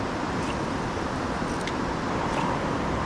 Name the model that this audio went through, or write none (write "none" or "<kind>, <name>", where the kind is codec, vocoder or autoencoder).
none